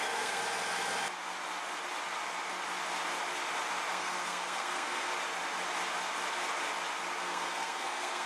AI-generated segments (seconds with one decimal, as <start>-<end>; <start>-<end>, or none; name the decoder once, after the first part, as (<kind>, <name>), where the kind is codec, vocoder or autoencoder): 0.0-0.4 (codec, SNAC); 3.9-5.1; 7.2-8.3